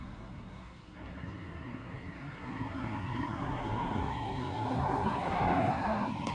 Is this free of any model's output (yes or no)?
no